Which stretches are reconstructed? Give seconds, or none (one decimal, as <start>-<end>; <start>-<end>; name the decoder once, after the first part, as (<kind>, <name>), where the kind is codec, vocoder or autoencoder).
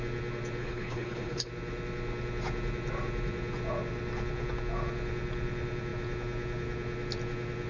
0.6-1.5 (codec, HILCodec)